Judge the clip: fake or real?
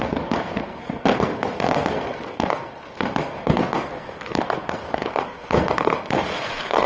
fake